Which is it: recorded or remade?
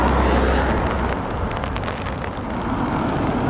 recorded